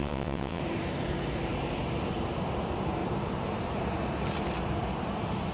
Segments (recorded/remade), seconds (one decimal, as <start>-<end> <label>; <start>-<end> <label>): 0.0-0.6 remade; 0.6-5.5 recorded